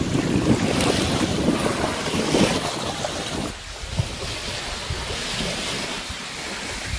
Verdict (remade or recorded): recorded